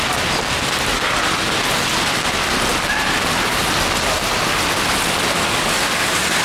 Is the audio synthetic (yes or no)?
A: no